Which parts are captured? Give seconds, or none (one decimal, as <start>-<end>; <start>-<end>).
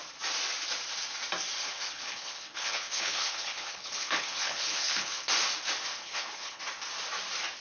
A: 0.0-1.6; 5.3-5.9; 6.6-7.6